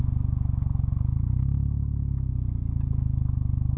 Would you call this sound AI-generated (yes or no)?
no